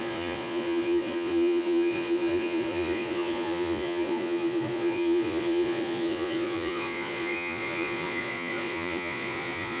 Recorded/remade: remade